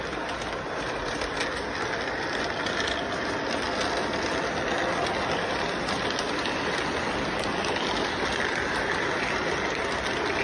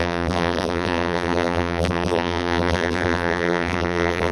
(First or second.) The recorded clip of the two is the first